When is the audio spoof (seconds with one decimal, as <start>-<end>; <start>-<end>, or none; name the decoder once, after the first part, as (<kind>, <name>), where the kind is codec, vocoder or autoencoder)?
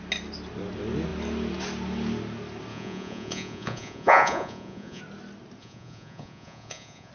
2.7-5.0 (vocoder, Vocos); 5.6-7.1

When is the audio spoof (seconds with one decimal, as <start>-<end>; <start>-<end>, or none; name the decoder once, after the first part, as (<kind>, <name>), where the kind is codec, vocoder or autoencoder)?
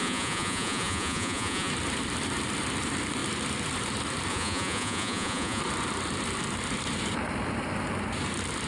0.0-1.7 (vocoder, Vocos); 4.3-5.6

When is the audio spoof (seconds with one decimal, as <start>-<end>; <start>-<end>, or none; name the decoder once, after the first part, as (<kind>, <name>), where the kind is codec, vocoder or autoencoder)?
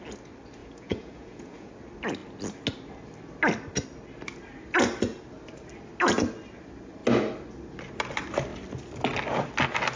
0.6-1.7 (vocoder, Vocos)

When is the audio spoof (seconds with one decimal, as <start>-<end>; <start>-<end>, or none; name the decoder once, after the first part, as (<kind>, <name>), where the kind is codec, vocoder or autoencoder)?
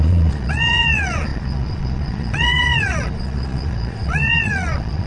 0.0-5.1 (vocoder, Vocos)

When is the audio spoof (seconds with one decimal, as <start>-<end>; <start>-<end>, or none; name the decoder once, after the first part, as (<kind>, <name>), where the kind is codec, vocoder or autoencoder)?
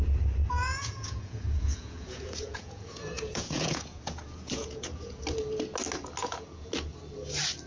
0.6-5.2 (vocoder, Vocos); 6.2-6.7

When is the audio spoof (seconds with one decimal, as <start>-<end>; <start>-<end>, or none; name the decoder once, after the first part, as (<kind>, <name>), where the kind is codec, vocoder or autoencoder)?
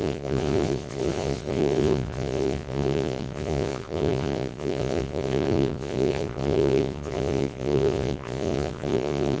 0.0-9.4 (vocoder, Vocos)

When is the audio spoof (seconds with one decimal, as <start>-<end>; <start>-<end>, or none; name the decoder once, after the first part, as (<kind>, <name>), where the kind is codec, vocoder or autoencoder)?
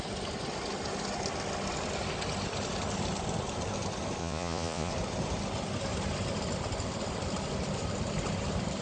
4.2-4.9 (vocoder, Vocos)